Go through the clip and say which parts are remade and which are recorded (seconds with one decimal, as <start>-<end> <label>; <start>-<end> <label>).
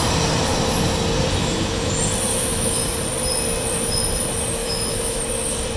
0.0-1.4 recorded; 1.4-1.9 remade; 1.9-2.3 recorded; 2.3-2.8 remade; 2.8-4.6 recorded; 4.6-5.2 remade; 5.2-5.8 recorded